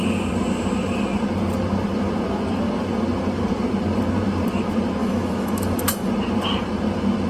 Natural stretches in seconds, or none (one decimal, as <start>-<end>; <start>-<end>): 0.0-5.0; 6.1-7.3